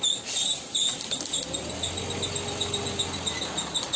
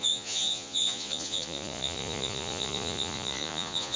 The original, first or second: first